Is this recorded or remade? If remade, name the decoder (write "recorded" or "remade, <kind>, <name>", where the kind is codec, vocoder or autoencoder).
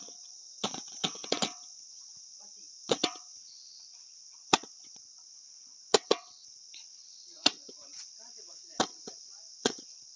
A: remade, vocoder, WaveNeXt